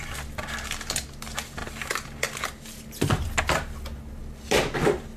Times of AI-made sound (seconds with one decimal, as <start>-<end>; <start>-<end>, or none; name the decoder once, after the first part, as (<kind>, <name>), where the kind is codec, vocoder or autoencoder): none